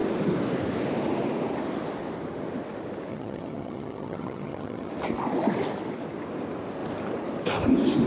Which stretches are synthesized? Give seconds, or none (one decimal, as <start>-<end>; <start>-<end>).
3.1-4.9